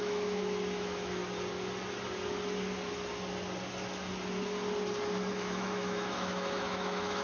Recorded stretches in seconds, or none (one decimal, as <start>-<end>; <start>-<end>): 1.2-5.3